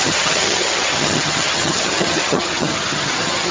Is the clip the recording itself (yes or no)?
no